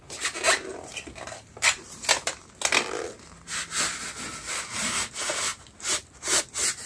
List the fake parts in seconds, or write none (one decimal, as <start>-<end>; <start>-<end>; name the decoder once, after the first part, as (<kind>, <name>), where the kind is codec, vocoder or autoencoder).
0.7-2.3 (vocoder, BigVGAN v2)